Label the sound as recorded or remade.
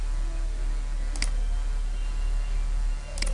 recorded